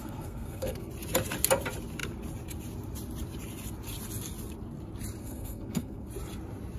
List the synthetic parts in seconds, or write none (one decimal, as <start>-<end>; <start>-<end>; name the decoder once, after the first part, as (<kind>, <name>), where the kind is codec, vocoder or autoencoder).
0.0-0.9 (codec, SNAC); 5.2-6.1